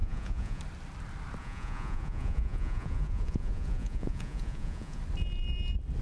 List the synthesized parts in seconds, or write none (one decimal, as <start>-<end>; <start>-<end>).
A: 0.0-0.6; 1.4-5.0

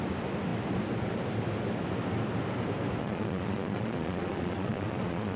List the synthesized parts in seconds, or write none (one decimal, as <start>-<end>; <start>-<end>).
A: 3.0-5.4

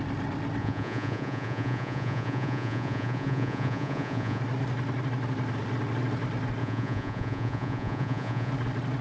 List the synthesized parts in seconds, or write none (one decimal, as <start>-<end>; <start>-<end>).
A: 0.6-4.4; 6.6-8.5